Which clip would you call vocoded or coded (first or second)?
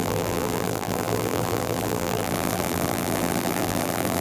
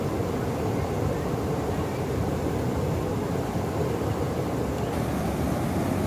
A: first